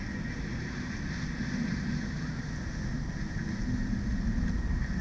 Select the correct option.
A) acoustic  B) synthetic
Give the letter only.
A